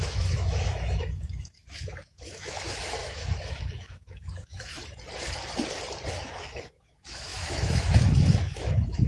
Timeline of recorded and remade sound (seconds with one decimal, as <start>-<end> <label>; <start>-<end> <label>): 0.0-4.8 remade; 4.8-6.1 recorded; 6.1-9.1 remade